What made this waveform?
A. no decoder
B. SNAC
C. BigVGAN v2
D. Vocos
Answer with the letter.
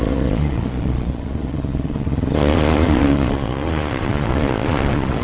D